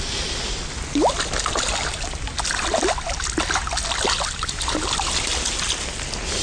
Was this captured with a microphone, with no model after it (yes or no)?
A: yes